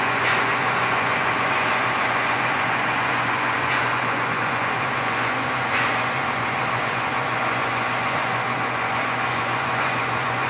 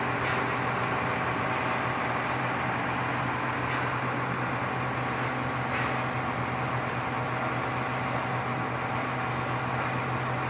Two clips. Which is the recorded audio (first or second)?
second